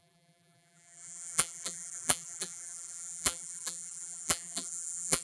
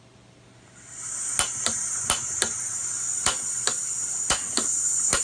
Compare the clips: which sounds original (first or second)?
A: second